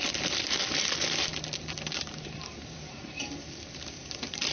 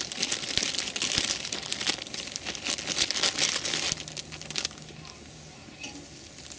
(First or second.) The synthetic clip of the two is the first